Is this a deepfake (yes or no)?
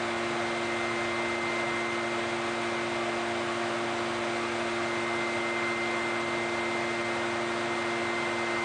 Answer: no